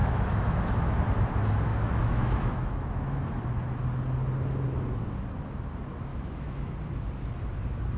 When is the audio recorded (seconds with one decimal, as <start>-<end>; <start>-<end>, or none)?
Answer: 1.0-1.7; 3.4-6.1; 6.7-8.0